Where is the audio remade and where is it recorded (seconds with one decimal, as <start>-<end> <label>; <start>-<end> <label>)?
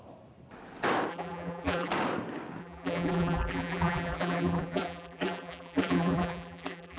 0.0-1.1 recorded; 1.1-1.9 remade; 1.9-2.6 recorded; 2.6-7.0 remade